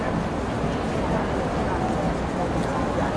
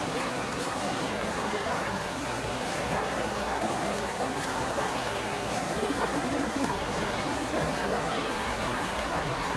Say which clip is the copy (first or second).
second